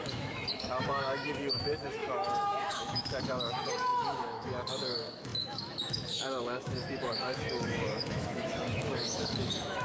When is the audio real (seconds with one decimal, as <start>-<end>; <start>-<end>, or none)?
none